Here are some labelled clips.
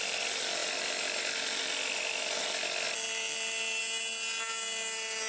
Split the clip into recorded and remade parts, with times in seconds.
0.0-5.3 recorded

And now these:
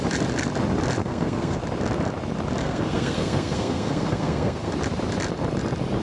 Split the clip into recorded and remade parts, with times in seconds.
0.0-1.0 recorded; 1.0-1.6 remade; 1.6-2.6 recorded; 2.6-4.7 remade; 4.7-6.0 recorded

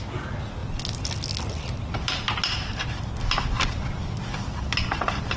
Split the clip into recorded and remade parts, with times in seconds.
0.0-5.4 recorded

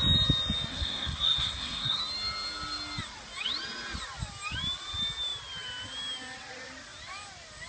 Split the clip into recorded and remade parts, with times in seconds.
0.0-0.7 recorded; 0.7-2.0 remade; 2.0-7.7 recorded

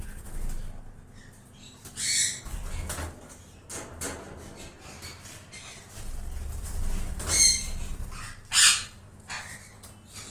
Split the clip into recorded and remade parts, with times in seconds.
0.0-10.3 recorded

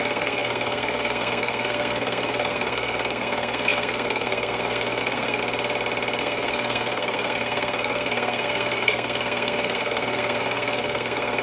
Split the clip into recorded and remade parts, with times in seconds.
0.0-5.4 remade; 5.4-6.2 recorded; 6.2-11.4 remade

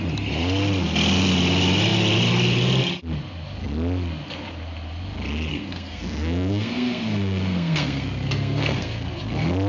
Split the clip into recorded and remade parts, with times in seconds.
0.0-5.5 recorded; 5.5-9.1 remade; 9.1-9.7 recorded

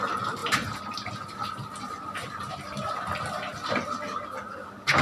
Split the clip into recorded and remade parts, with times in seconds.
0.0-5.0 recorded